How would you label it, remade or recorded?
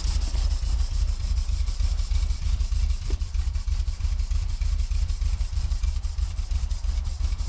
remade